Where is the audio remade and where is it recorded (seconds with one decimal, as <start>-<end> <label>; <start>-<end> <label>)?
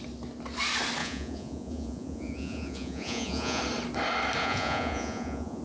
0.0-1.0 recorded; 1.0-3.6 remade; 3.6-4.4 recorded; 4.4-5.6 remade